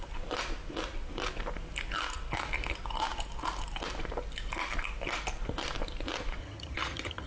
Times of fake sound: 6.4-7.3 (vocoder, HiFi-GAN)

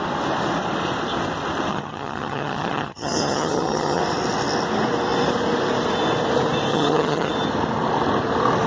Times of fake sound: 1.7-4.0 (vocoder, HiFi-GAN); 6.7-7.3

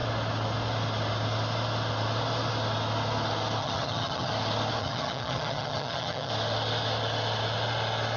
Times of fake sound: 3.6-4.3 (vocoder, HiFi-GAN); 4.8-6.3